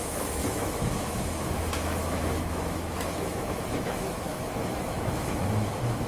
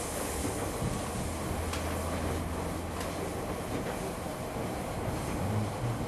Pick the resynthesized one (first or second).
first